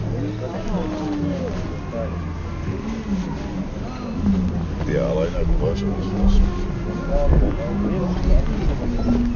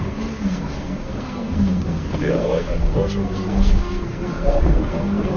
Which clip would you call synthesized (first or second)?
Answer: second